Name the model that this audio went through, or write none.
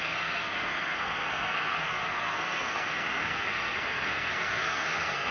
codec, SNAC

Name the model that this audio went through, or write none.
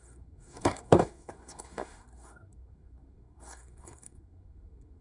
codec, SNAC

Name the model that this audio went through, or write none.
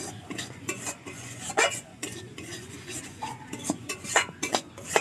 vocoder, Vocos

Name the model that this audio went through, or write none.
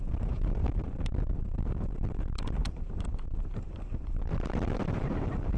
vocoder, BigVGAN v2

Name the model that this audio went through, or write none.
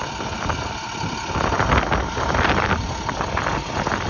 none